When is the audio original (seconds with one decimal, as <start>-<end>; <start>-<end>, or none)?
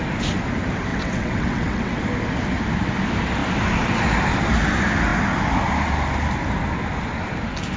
0.0-0.9; 2.0-7.8